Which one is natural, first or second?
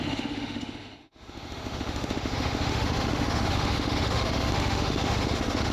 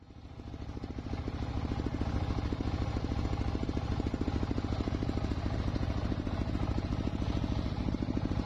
second